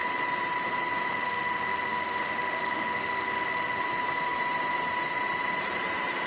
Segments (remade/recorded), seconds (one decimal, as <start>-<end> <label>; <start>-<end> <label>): 0.0-1.1 recorded; 1.1-3.8 remade; 3.8-6.3 recorded